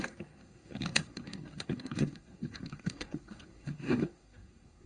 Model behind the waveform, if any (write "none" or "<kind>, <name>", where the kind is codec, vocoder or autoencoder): codec, SNAC